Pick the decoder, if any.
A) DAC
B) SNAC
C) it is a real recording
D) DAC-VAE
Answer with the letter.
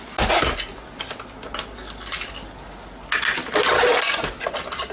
C